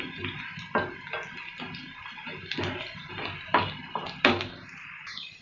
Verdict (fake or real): real